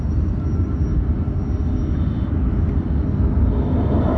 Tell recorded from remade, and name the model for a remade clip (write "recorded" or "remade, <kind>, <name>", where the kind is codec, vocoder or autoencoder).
recorded